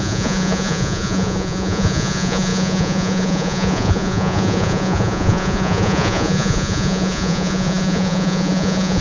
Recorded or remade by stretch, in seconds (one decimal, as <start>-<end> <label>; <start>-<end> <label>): 0.0-9.0 remade